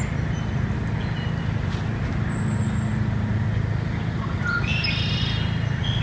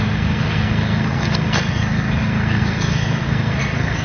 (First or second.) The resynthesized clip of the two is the second